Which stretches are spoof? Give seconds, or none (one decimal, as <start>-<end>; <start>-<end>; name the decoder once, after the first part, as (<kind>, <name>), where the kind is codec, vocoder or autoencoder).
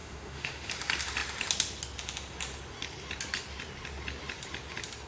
0.0-0.7 (autoencoder, DAC-VAE)